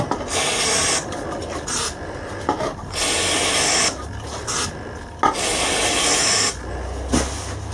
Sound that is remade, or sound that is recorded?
recorded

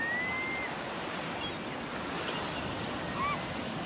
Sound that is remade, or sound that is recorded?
recorded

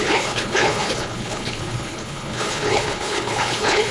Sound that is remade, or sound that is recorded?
remade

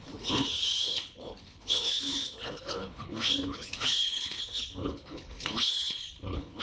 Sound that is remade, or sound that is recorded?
remade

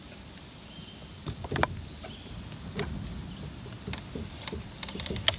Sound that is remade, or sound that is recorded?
recorded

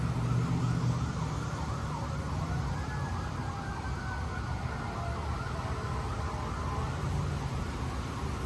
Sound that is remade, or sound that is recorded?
recorded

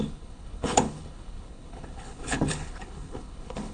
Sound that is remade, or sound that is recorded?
remade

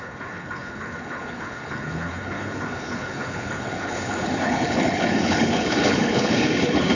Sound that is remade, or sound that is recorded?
remade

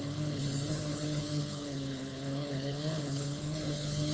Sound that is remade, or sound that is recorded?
remade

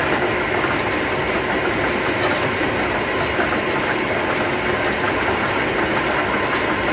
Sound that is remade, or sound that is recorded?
recorded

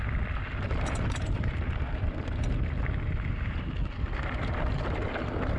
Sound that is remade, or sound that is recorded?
recorded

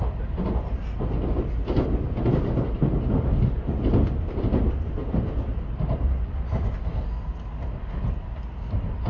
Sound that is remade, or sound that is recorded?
recorded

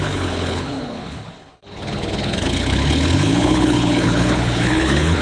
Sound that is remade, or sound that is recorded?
remade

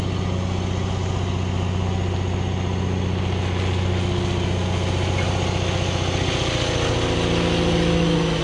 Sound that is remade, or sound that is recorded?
recorded